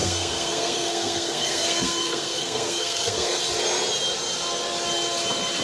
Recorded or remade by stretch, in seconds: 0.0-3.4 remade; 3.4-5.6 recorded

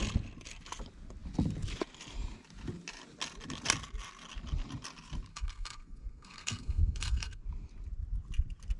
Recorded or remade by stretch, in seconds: 0.0-5.3 recorded; 5.3-7.4 remade; 7.4-8.8 recorded

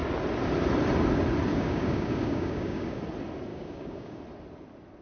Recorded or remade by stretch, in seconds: 0.0-1.5 recorded; 1.5-3.0 remade; 3.0-3.5 recorded; 3.5-4.2 remade; 4.2-5.0 recorded

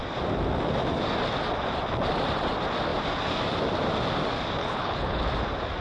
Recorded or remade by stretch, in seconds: 0.0-4.6 recorded; 4.6-5.2 remade; 5.2-5.8 recorded

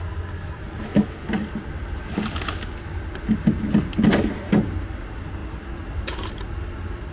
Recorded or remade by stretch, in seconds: 0.0-7.1 recorded

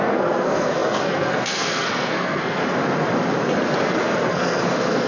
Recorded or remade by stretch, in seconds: 0.0-2.6 remade; 2.6-4.3 recorded; 4.3-5.1 remade